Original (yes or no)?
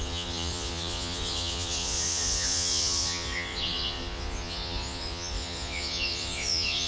no